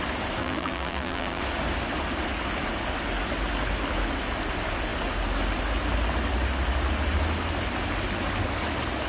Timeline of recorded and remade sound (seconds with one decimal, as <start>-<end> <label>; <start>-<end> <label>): 0.0-0.4 recorded; 0.4-1.4 remade; 1.4-9.1 recorded